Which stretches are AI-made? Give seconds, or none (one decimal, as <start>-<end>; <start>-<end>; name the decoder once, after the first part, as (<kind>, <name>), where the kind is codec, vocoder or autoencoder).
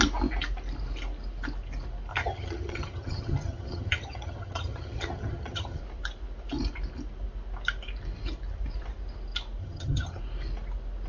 2.1-5.8 (vocoder, HiFi-GAN); 9.6-10.2